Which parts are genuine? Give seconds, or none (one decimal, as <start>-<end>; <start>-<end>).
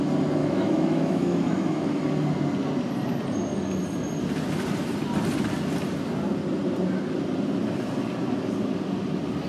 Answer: 0.0-0.4; 2.0-9.5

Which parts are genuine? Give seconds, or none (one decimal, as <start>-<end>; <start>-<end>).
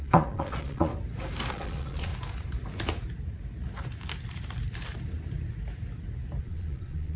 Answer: 0.9-1.5; 2.1-6.4